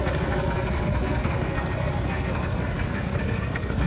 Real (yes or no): no